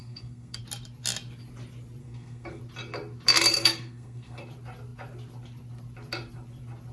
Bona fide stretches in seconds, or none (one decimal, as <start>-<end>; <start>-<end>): 0.6-2.0; 2.6-3.5; 4.4-6.9